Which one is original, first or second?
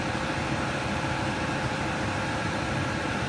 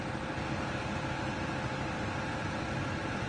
second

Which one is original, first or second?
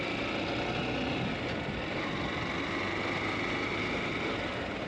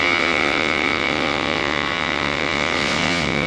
first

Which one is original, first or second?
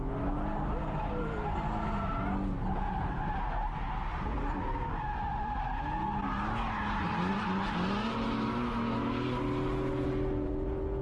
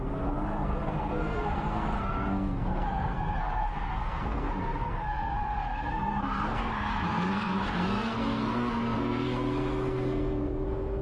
first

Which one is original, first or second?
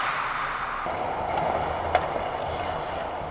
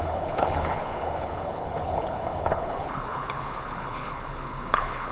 first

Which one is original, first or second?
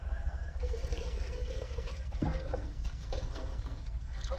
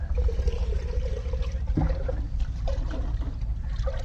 second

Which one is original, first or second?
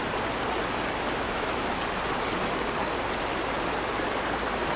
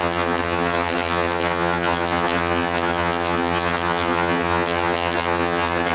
first